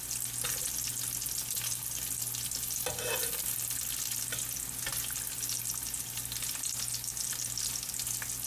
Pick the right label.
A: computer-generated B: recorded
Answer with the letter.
B